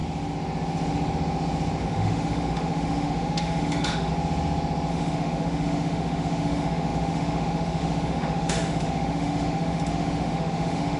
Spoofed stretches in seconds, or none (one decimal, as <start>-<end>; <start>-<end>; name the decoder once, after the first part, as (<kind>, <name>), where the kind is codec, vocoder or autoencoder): 1.8-4.1 (autoencoder, DAC-VAE); 4.9-11.0